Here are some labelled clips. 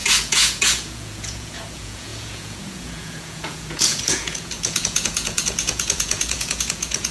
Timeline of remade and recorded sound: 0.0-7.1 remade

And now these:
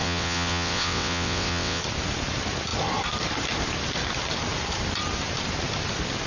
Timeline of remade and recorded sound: 0.0-1.8 remade; 1.8-6.3 recorded

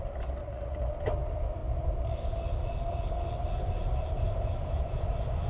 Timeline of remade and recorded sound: 0.0-0.4 recorded; 0.4-0.9 remade; 0.9-5.5 recorded

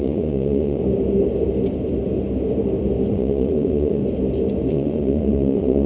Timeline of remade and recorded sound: 0.0-0.8 remade; 0.8-3.1 recorded; 3.1-4.0 remade; 4.0-4.7 recorded; 4.7-5.9 remade

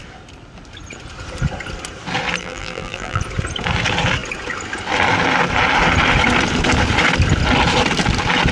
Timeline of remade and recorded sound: 0.0-2.4 recorded; 2.4-3.2 remade; 3.2-8.5 recorded

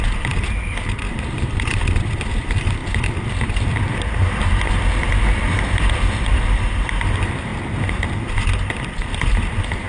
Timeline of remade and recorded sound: 0.0-2.8 remade; 2.8-4.4 recorded; 4.4-7.5 remade; 7.5-8.7 recorded; 8.7-9.9 remade

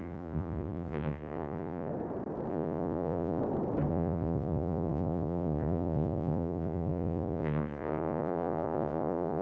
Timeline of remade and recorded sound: 0.0-1.9 remade; 1.9-2.5 recorded; 2.5-3.4 remade; 3.4-3.9 recorded; 3.9-9.4 remade